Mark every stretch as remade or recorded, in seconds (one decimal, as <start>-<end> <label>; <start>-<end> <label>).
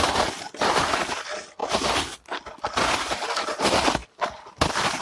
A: 0.0-5.0 recorded